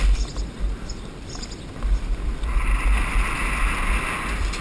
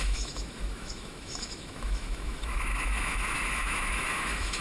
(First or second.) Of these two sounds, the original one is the first